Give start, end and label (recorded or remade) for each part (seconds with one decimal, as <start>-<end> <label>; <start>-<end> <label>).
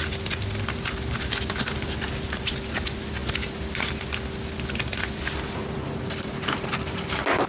0.0-7.5 recorded